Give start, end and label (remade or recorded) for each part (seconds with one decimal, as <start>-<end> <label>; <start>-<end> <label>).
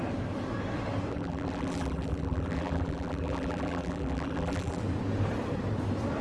0.0-1.1 recorded; 1.1-4.8 remade; 4.8-6.2 recorded